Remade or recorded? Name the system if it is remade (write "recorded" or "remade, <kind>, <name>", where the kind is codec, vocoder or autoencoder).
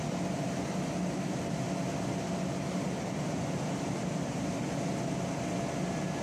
recorded